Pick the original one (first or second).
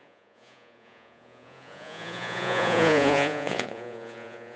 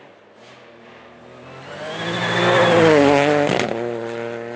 second